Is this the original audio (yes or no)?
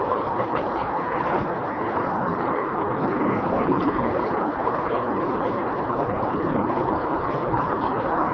no